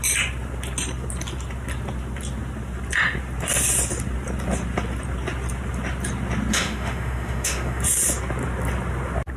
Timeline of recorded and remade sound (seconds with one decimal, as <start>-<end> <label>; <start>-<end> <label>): 0.0-6.5 recorded; 6.5-7.8 remade; 7.8-9.4 recorded